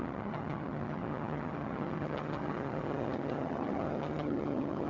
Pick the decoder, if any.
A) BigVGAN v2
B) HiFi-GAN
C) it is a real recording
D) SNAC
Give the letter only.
B